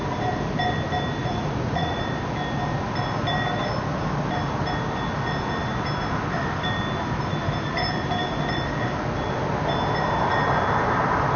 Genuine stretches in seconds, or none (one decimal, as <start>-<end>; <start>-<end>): 0.0-1.2; 2.0-11.4